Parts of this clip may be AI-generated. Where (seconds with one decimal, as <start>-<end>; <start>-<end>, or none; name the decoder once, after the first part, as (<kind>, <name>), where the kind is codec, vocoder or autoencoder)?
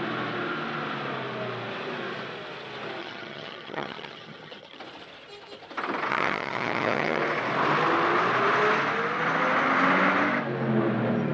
3.0-4.8 (vocoder, HiFi-GAN); 6.1-7.2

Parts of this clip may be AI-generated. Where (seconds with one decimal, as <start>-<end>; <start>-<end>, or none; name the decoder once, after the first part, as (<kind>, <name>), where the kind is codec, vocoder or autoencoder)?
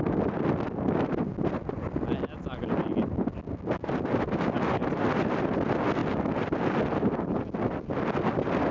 none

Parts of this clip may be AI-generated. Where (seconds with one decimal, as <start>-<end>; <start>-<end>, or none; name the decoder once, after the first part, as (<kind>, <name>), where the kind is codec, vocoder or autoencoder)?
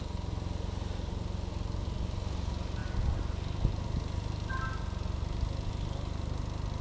none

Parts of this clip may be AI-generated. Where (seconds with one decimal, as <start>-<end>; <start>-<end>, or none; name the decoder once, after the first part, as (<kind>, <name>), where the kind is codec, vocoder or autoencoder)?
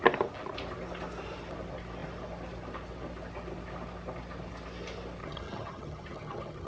5.2-6.7 (vocoder, HiFi-GAN)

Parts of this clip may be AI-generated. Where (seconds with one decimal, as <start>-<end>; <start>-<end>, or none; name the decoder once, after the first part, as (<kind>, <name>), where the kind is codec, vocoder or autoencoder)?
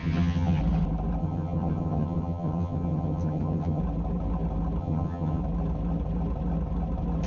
0.0-0.6 (vocoder, HiFi-GAN); 1.2-3.8; 4.8-5.4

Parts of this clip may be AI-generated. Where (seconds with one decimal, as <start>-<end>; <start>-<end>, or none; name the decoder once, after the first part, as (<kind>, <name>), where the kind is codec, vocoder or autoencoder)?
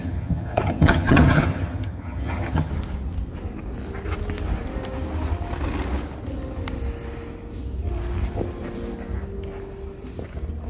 0.0-2.7 (vocoder, HiFi-GAN)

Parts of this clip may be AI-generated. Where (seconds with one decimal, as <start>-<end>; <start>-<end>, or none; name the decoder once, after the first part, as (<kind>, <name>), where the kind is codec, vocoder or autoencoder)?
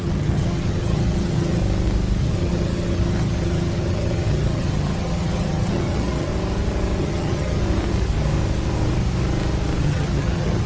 0.0-1.6 (vocoder, HiFi-GAN); 2.2-6.3; 7.0-7.6; 9.8-10.7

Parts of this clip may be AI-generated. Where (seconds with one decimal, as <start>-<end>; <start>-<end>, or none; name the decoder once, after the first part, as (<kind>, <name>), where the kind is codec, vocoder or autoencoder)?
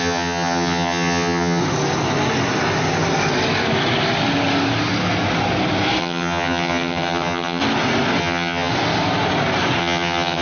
0.0-1.6 (vocoder, HiFi-GAN); 6.0-7.6; 8.2-8.7; 9.8-10.4